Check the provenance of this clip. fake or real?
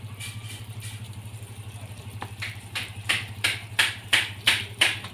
fake